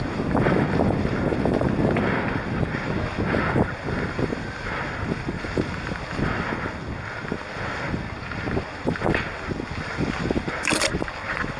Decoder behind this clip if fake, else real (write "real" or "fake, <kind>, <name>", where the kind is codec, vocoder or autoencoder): real